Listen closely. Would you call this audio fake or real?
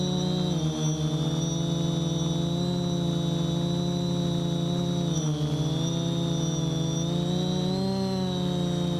real